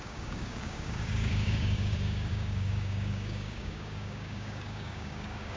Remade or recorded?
remade